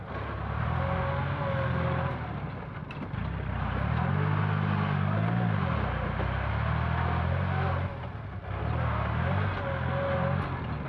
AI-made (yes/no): no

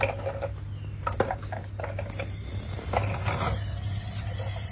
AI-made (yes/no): no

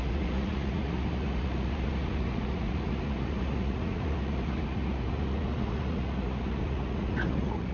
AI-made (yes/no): yes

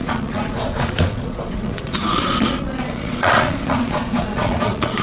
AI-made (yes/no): yes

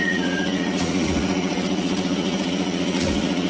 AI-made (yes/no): yes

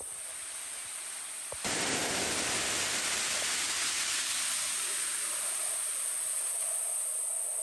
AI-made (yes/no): no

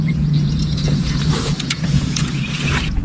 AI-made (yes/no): yes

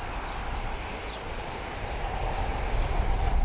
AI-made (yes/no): no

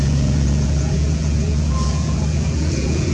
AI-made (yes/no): yes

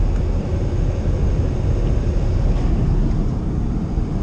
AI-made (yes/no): no